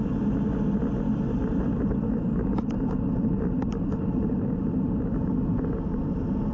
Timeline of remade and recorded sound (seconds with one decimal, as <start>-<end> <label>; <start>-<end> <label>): 0.0-1.5 recorded; 1.5-5.3 remade; 5.3-6.5 recorded